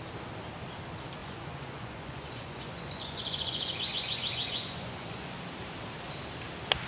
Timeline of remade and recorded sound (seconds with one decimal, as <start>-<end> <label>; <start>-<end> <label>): 0.0-1.2 recorded; 1.2-5.3 remade; 5.3-6.9 recorded